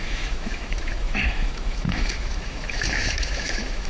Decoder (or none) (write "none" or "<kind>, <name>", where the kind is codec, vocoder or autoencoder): autoencoder, DAC-VAE